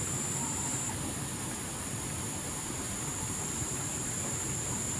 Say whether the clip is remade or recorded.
remade